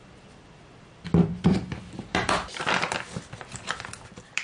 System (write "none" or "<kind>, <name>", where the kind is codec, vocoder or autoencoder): vocoder, BigVGAN v2